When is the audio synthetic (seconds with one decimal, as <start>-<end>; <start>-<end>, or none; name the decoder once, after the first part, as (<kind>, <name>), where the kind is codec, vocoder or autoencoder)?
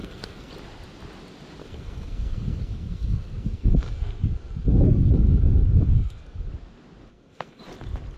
0.0-0.5 (codec, SNAC); 1.6-6.5; 7.1-7.6